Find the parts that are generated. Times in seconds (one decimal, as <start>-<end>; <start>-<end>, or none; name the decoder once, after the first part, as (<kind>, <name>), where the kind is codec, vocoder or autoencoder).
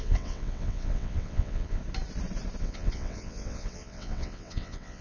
0.0-1.8 (vocoder, WaveNeXt); 2.6-5.0